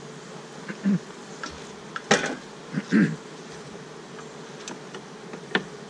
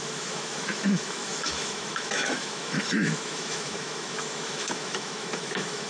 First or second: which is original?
first